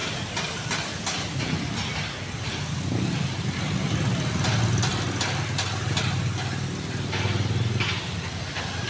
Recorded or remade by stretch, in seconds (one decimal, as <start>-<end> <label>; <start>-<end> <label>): 0.0-8.9 recorded